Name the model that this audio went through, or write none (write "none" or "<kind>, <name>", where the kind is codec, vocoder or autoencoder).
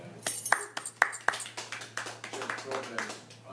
none